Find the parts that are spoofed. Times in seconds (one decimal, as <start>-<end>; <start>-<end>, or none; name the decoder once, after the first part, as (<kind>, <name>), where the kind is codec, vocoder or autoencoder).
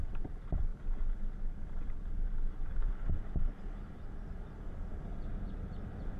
none